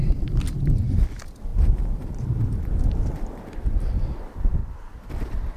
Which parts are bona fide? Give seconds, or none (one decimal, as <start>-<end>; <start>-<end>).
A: 0.0-1.5; 3.4-4.6; 5.1-5.6